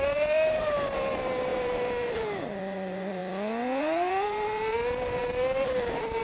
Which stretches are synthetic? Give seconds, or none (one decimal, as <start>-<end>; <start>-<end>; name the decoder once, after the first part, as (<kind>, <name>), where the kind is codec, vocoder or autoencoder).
0.0-3.2 (vocoder, BigVGAN v2); 3.8-6.2